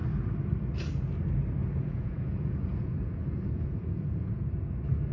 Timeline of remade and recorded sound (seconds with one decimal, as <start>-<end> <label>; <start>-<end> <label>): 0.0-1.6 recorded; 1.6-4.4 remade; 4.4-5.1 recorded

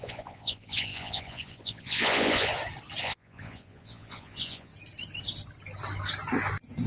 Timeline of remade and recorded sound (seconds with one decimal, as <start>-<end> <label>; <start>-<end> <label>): 0.0-2.5 remade; 2.5-3.0 recorded; 3.0-4.7 remade; 4.7-6.9 recorded

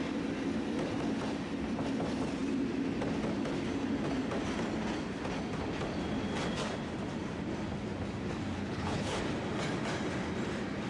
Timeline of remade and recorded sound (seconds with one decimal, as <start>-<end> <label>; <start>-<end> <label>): 0.0-8.6 recorded; 8.6-9.2 remade; 9.2-10.9 recorded

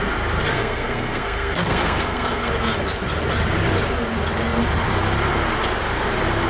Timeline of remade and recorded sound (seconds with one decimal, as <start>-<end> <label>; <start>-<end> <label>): 0.0-0.5 recorded; 0.5-2.5 remade; 2.5-6.5 recorded